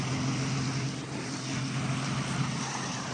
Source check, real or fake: real